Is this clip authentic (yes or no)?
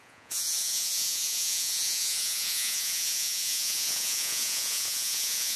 no